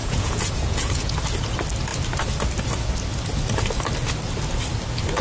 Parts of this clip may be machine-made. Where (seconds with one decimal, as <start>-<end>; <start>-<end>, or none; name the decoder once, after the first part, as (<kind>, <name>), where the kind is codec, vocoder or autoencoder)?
0.0-1.1 (vocoder, Vocos)